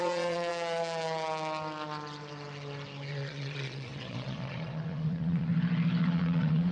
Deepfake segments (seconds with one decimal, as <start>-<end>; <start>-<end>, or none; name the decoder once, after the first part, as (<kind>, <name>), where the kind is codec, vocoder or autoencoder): 0.0-0.5 (vocoder, Vocos); 3.1-5.5; 6.0-6.7